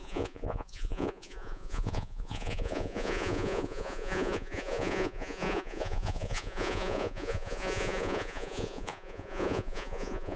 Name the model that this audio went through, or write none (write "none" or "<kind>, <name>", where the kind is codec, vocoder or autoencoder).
vocoder, Vocos